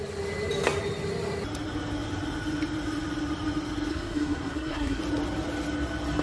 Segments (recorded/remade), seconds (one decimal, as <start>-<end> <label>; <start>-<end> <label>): 0.0-3.9 recorded; 3.9-5.0 remade; 5.0-6.2 recorded